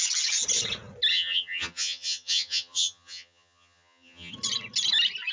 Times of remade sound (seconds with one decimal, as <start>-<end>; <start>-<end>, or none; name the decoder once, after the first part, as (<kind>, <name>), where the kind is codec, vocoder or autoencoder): 1.1-4.3 (vocoder, HiFi-GAN)